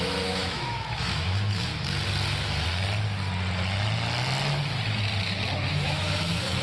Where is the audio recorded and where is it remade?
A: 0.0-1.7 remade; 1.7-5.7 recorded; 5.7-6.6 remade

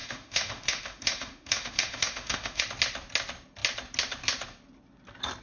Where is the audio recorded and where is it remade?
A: 0.0-2.6 remade; 2.6-5.4 recorded

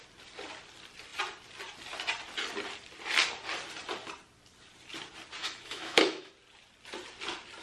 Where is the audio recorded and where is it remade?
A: 0.0-5.4 recorded; 5.4-6.3 remade; 6.3-7.6 recorded

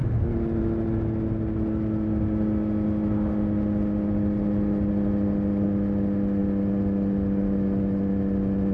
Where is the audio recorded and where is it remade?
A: 0.0-8.7 recorded

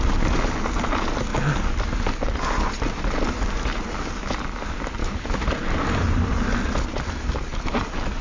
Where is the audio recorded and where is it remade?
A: 0.0-5.0 recorded; 5.0-5.5 remade; 5.5-8.2 recorded

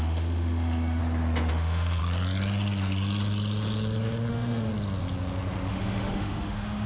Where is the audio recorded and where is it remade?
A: 0.0-1.0 remade; 1.0-1.5 recorded; 1.5-2.0 remade; 2.0-4.3 recorded; 4.3-4.7 remade; 4.7-5.7 recorded; 5.7-6.9 remade

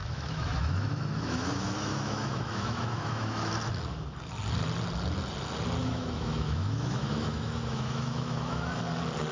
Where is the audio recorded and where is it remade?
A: 0.0-3.5 remade; 3.5-5.8 recorded; 5.8-8.8 remade; 8.8-9.3 recorded